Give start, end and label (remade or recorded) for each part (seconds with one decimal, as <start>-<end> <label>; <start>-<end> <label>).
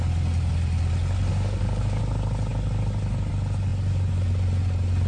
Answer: 0.0-1.3 recorded; 1.3-2.0 remade; 2.0-5.1 recorded